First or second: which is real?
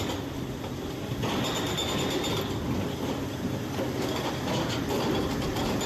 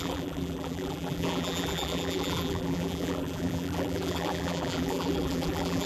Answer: first